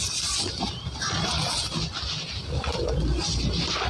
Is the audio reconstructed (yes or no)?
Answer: no